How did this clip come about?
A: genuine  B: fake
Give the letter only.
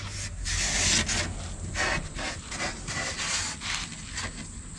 A